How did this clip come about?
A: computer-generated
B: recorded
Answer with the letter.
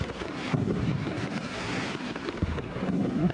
A